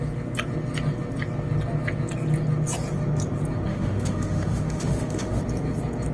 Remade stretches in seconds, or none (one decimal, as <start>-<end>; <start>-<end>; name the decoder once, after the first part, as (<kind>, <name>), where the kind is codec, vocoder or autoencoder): 3.7-5.4 (autoencoder, DAC-VAE)